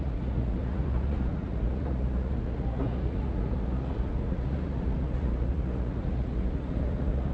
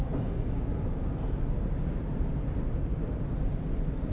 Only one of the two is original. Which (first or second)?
second